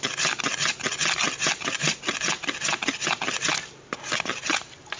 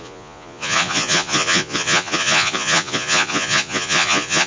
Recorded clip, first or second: first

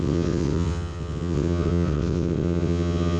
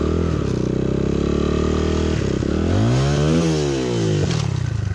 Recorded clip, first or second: second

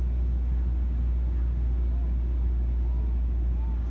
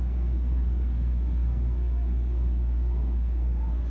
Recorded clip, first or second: first